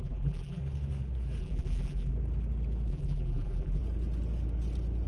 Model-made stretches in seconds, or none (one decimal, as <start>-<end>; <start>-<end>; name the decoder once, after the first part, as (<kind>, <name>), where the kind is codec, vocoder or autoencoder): 0.0-0.6 (vocoder, BigVGAN v2); 1.4-2.1; 2.9-3.8

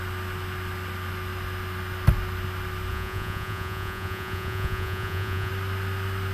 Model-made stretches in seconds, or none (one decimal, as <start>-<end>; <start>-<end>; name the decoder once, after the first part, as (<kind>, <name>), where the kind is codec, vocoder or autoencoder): 2.9-5.5 (vocoder, Vocos)

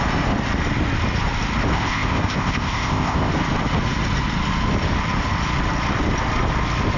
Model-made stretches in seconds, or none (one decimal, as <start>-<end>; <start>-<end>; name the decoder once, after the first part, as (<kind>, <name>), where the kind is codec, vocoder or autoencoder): 1.7-3.3 (codec, ZipCodec)

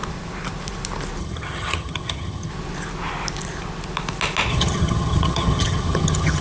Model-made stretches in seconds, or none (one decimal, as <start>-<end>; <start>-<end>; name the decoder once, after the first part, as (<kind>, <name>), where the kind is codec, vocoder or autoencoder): 1.2-2.5 (vocoder, HiFi-GAN); 4.5-6.4